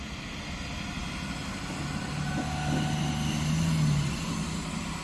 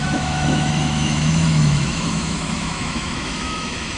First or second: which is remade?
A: second